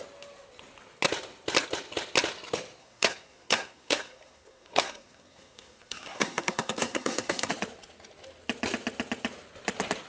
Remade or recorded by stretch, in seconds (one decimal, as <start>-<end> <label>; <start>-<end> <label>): 0.0-2.8 recorded; 2.8-7.5 remade; 7.5-10.1 recorded